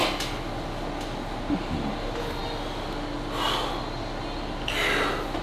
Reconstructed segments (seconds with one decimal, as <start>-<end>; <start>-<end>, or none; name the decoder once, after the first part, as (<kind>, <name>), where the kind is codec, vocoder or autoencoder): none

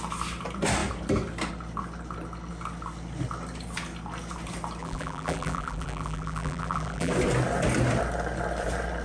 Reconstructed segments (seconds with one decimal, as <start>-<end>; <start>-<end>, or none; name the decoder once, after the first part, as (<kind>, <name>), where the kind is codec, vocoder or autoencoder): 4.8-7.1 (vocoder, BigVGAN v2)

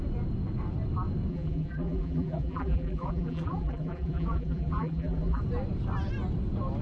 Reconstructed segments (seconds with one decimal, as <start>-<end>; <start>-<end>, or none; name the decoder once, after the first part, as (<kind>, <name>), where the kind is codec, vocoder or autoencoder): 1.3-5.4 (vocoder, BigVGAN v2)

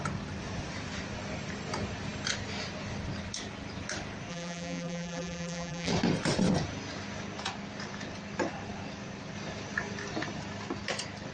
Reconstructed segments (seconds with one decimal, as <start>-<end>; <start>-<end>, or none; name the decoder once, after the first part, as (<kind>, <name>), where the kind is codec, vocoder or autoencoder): 4.3-5.9 (vocoder, BigVGAN v2)